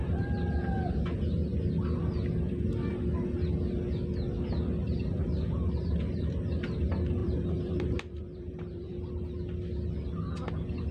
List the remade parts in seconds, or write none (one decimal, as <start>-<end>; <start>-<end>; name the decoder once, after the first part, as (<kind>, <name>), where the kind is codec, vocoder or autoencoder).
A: 5.0-5.7 (vocoder, BigVGAN v2); 7.2-9.1